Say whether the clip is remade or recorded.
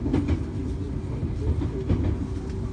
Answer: recorded